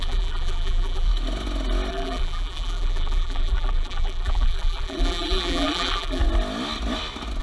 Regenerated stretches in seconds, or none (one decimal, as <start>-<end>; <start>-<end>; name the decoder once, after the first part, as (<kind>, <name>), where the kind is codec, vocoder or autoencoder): 0.0-1.1 (vocoder, BigVGAN v2); 1.9-6.2